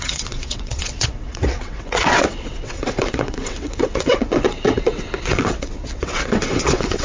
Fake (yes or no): yes